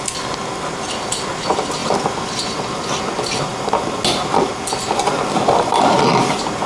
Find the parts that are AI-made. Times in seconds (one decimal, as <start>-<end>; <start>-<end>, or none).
none

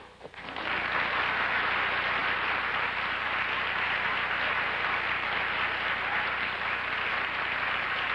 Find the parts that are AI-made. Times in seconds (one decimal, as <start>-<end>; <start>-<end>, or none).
none

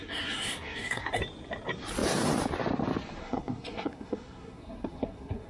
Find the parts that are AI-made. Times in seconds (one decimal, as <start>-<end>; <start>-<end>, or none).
0.0-1.2; 3.2-5.5